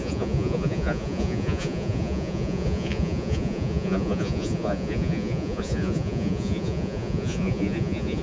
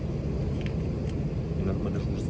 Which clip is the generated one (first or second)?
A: first